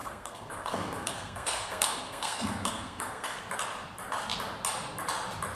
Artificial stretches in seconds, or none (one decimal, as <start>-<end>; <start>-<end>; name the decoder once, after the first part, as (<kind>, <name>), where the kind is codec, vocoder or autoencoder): 0.0-3.4 (codec, SNAC)